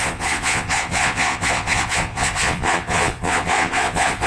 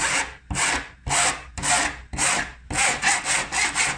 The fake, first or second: first